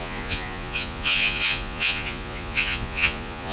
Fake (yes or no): yes